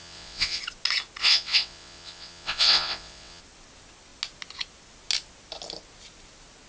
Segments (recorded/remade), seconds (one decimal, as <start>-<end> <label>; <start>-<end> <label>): 0.0-0.6 remade; 0.6-1.2 recorded; 1.2-3.4 remade; 3.4-6.7 recorded